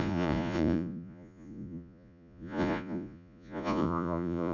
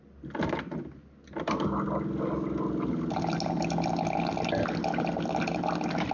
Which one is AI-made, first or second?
first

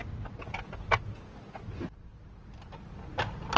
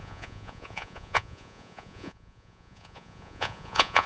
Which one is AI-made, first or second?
second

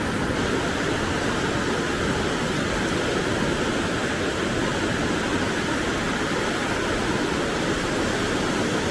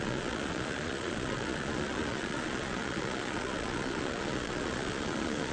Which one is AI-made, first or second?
second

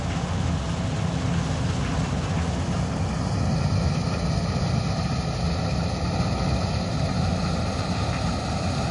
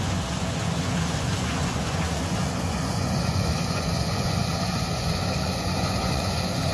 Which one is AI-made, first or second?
second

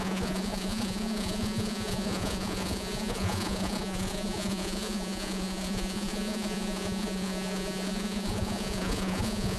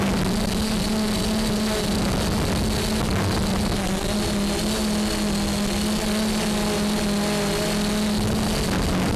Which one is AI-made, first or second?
first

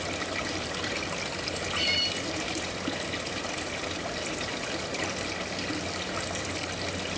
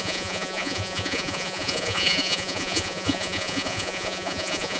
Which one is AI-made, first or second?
second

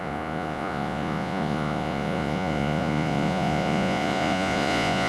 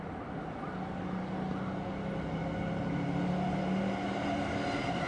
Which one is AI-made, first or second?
first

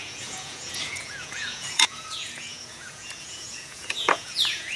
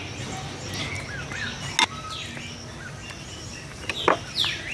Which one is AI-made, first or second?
first